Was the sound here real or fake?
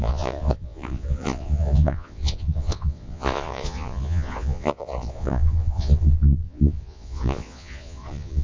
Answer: fake